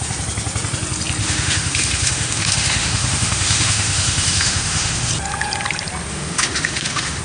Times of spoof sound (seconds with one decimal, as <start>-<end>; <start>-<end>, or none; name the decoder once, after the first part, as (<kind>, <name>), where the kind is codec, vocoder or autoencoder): 1.2-5.1 (autoencoder, DAC-VAE); 6.1-7.2